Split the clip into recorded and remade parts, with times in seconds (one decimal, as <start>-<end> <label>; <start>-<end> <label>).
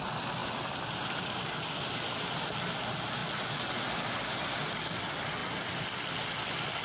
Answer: 0.0-0.4 recorded; 0.4-1.9 remade; 1.9-6.8 recorded